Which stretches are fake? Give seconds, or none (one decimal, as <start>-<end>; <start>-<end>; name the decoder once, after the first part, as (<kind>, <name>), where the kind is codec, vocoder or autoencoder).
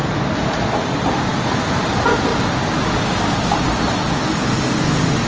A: none